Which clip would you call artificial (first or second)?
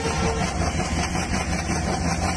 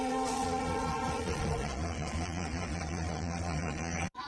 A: second